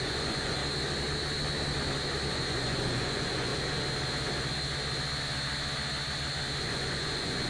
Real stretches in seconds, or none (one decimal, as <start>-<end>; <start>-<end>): 0.6-2.3; 3.5-6.6